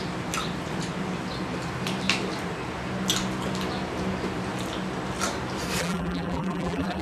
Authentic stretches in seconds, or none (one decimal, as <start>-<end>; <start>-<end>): 0.0-5.8